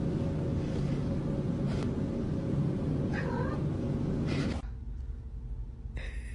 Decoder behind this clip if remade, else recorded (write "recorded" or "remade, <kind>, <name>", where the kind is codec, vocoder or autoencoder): recorded